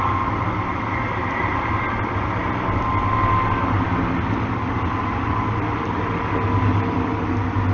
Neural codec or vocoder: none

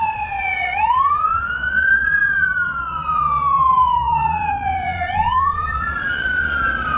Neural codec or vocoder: vocoder, Vocos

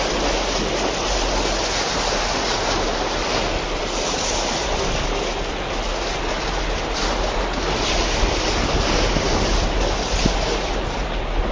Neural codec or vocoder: none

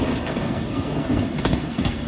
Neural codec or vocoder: codec, SNAC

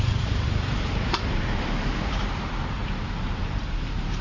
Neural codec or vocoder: vocoder, BigVGAN v2